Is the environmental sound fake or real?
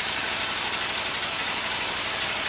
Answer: real